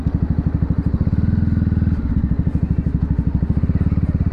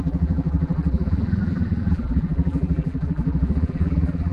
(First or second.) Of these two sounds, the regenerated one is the second